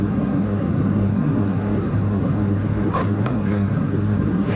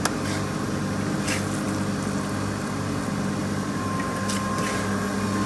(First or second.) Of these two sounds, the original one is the second